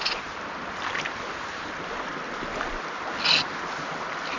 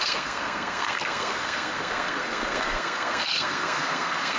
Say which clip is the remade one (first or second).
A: second